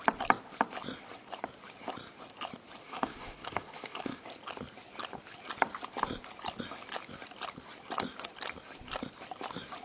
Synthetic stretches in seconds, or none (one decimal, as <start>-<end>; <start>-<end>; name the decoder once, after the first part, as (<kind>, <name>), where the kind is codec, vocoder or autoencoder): 2.8-4.2 (autoencoder, DAC-VAE)